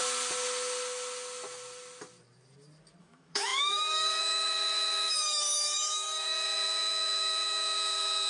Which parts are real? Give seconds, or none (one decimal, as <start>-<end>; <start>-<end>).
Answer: 0.0-3.0